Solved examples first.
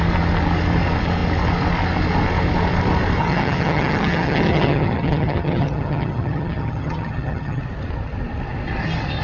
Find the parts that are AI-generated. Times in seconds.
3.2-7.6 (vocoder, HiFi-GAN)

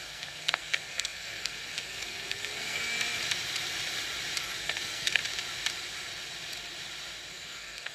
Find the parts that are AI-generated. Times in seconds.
0.0-2.8 (codec, SNAC); 4.6-5.2; 7.3-7.9

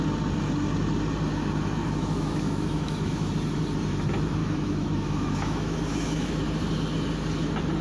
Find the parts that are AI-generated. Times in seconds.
1.8-3.3 (autoencoder, DAC-VAE); 4.4-6.4

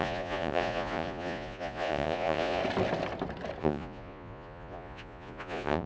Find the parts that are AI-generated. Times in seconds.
0.0-2.6 (vocoder, Vocos); 3.6-5.9

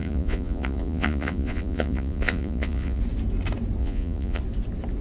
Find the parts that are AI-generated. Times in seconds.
0.0-3.0 (vocoder, Vocos); 3.8-4.4

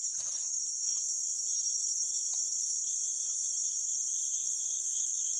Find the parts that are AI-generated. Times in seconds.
0.0-5.4 (codec, HILCodec)